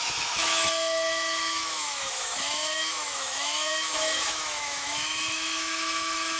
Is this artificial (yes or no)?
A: yes